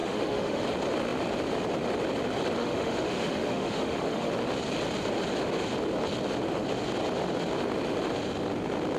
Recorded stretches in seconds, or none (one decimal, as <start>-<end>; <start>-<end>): 0.6-2.6; 4.3-9.0